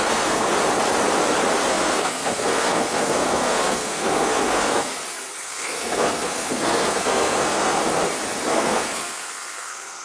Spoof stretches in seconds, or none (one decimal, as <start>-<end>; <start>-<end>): 0.0-0.5; 1.7-4.9; 5.4-7.8; 8.5-10.0